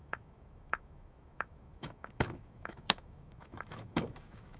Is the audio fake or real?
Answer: fake